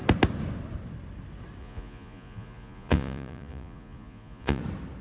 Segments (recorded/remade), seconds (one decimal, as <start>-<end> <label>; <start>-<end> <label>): 0.0-1.6 recorded; 1.6-4.6 remade; 4.6-5.0 recorded

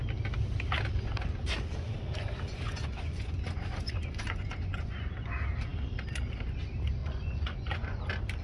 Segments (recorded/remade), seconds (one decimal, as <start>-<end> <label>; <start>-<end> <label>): 0.0-2.5 recorded; 2.5-5.1 remade; 5.1-7.0 recorded; 7.0-8.0 remade; 8.0-8.4 recorded

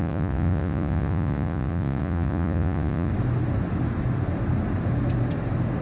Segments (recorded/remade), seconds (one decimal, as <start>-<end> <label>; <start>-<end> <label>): 0.0-3.1 remade; 3.1-5.8 recorded

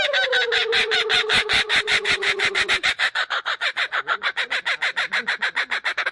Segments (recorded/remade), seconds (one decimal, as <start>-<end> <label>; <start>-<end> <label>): 0.0-0.7 recorded; 0.7-4.4 remade; 4.4-6.1 recorded

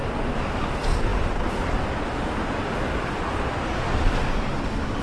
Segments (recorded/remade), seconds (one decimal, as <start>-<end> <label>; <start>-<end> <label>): 0.0-5.0 recorded

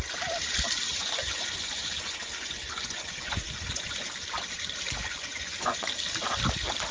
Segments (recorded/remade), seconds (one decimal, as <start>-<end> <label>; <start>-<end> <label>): 0.0-0.9 recorded; 0.9-4.1 remade; 4.1-5.0 recorded; 5.0-5.9 remade; 5.9-6.9 recorded